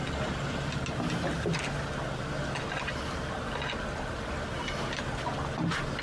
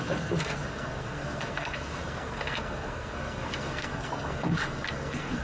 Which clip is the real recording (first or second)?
first